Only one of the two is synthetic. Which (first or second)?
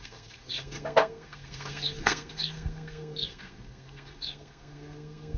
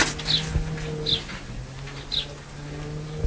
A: first